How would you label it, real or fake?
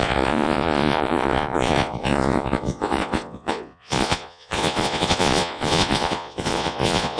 fake